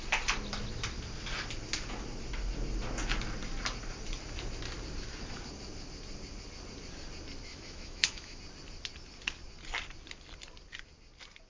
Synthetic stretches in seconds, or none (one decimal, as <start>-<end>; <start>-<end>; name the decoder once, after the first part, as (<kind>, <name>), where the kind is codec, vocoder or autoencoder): 7.5-8.4 (autoencoder, DAC-VAE)